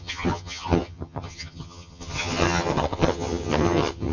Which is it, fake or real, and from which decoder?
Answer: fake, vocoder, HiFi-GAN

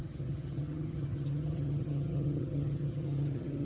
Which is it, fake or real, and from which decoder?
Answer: fake, vocoder, HiFi-GAN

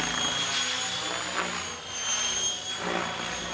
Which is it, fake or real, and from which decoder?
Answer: real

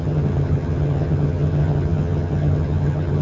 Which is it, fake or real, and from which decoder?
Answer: fake, vocoder, HiFi-GAN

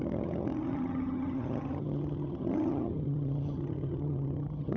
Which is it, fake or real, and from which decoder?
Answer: fake, vocoder, HiFi-GAN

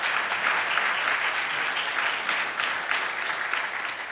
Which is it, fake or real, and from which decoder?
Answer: real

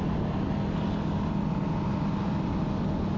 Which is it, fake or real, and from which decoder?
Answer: real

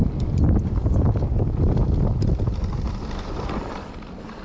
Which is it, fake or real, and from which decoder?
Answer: real